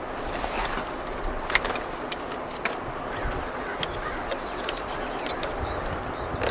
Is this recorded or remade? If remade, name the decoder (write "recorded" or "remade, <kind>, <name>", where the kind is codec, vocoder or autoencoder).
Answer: recorded